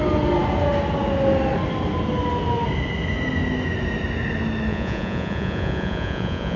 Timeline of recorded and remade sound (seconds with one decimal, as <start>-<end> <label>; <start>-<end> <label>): 0.0-4.7 recorded; 4.7-6.6 remade